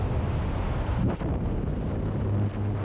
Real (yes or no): yes